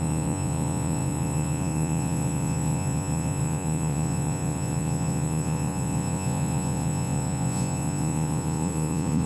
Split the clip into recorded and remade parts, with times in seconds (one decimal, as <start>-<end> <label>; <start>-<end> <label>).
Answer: 0.0-9.3 remade